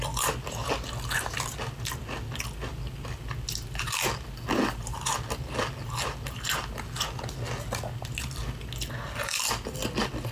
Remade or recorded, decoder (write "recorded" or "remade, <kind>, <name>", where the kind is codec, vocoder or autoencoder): recorded